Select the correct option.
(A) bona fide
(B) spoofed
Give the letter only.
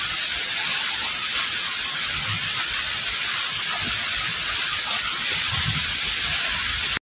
A